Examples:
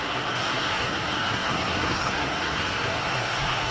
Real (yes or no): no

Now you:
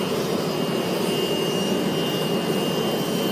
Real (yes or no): yes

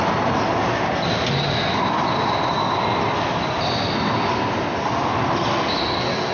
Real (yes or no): yes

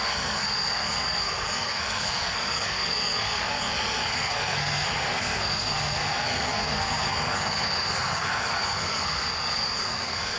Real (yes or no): no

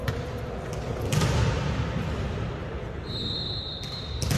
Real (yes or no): yes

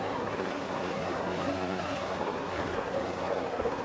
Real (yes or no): no